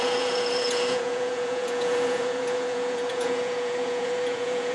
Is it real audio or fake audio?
fake